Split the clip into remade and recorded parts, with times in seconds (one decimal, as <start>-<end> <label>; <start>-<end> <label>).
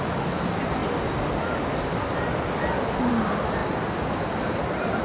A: 0.0-5.0 recorded